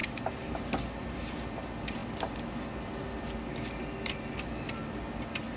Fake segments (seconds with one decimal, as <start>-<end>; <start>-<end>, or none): none